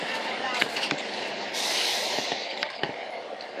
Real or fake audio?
fake